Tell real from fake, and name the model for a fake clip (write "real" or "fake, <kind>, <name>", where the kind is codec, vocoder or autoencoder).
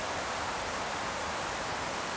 real